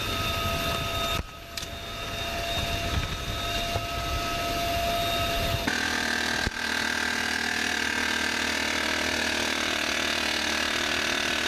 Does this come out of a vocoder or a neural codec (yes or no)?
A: no